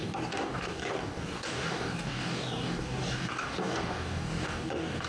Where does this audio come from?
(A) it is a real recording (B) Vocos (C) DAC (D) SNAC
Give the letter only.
C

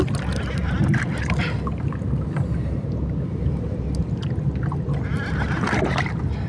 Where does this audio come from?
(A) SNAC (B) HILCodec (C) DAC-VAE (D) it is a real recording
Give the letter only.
D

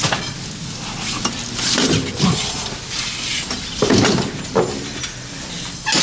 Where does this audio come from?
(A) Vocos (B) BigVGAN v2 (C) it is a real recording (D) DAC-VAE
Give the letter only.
C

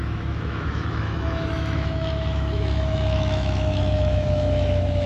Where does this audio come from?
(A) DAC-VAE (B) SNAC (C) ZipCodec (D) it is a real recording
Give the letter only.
A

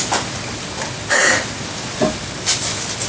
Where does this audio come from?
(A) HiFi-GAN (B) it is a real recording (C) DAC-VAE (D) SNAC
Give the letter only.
B